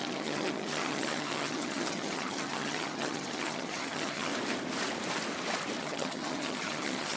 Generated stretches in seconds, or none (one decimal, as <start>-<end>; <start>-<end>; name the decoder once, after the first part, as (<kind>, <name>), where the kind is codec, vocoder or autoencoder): 0.0-4.3 (vocoder, HiFi-GAN); 5.8-7.2